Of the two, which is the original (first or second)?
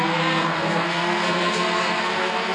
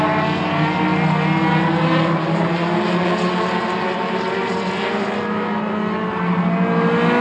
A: second